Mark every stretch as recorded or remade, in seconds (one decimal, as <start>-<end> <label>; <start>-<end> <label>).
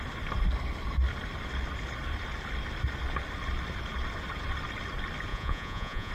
0.0-5.3 recorded; 5.3-6.1 remade